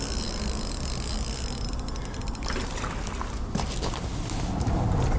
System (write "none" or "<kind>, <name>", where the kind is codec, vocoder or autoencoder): none